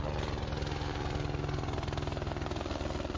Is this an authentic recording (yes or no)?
yes